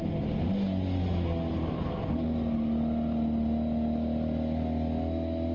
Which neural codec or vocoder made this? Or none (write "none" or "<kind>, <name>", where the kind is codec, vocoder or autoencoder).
none